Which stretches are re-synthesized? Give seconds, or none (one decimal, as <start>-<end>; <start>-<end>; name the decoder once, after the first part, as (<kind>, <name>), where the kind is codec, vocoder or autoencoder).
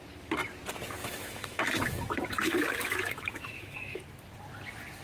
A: 1.0-4.0 (autoencoder, DAC-VAE)